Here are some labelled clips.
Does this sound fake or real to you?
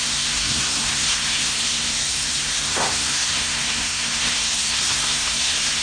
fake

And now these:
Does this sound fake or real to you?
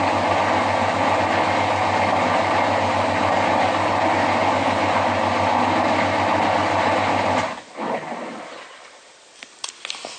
real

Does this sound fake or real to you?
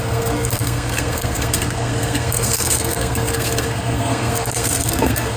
fake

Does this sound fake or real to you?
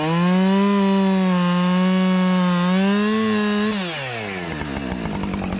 real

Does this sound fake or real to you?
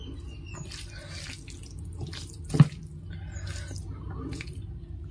real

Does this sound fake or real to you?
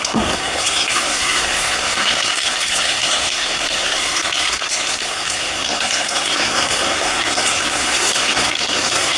fake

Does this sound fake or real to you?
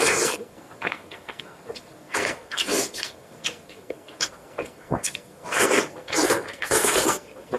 fake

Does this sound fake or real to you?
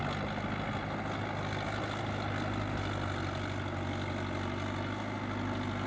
real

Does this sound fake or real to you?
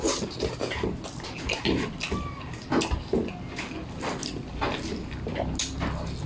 real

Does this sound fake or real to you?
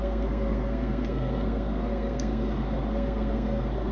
fake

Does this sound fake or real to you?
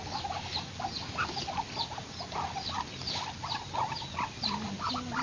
real